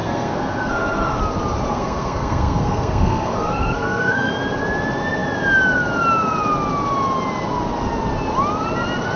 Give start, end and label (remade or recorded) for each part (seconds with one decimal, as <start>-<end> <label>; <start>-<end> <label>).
0.0-1.2 remade; 1.2-1.7 recorded; 1.7-4.3 remade; 4.3-9.2 recorded